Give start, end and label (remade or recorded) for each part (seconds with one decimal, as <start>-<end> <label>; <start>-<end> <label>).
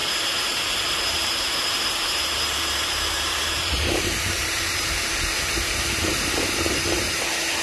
0.0-7.6 remade